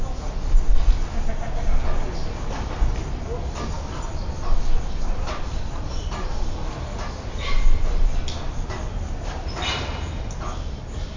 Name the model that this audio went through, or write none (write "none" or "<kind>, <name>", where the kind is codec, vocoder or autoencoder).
none